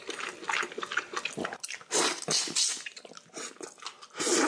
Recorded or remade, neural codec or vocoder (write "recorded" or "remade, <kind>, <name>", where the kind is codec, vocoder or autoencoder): recorded